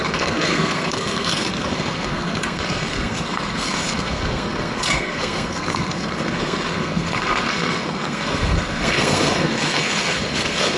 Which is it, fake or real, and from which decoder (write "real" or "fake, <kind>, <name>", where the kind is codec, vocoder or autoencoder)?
fake, codec, SNAC